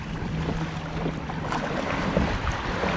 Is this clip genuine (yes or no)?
yes